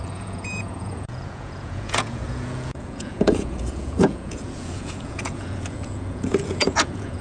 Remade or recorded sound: remade